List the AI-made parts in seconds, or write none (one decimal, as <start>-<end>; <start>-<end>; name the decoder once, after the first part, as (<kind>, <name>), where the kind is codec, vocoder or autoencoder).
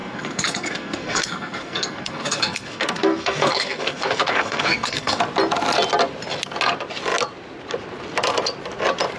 0.0-5.2 (codec, SNAC)